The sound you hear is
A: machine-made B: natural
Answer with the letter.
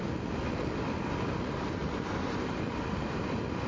B